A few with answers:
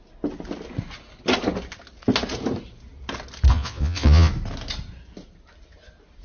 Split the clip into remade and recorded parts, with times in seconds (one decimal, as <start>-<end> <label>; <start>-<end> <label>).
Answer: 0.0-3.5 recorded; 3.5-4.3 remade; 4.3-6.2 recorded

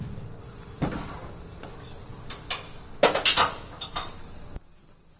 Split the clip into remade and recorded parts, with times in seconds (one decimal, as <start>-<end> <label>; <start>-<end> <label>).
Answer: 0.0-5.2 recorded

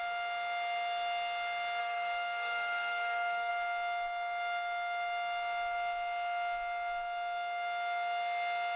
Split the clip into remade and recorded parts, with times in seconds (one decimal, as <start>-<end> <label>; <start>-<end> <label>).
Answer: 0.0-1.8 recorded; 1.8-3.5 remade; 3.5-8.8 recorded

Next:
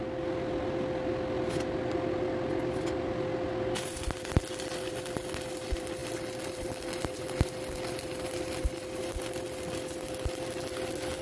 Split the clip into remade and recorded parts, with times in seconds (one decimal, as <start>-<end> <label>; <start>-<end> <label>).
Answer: 0.0-11.2 recorded

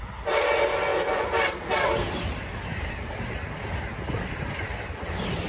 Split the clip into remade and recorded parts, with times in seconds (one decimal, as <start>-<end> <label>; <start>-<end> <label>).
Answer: 0.0-0.9 recorded; 0.9-2.2 remade; 2.2-2.7 recorded; 2.7-3.3 remade; 3.3-3.9 recorded; 3.9-5.5 remade

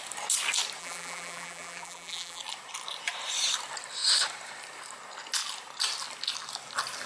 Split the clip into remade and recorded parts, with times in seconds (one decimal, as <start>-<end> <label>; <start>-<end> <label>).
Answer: 0.0-0.8 recorded; 0.8-2.4 remade; 2.4-7.1 recorded

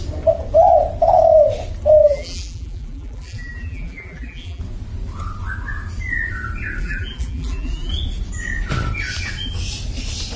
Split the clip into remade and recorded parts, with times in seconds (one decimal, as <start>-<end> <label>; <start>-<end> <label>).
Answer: 0.0-2.0 recorded; 2.0-4.6 remade; 4.6-6.8 recorded; 6.8-7.9 remade; 7.9-10.4 recorded